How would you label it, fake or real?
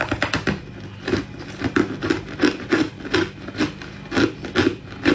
real